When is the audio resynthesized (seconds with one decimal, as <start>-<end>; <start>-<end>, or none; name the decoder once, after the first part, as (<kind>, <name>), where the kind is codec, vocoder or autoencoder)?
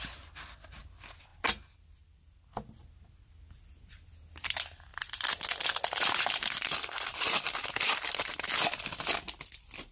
none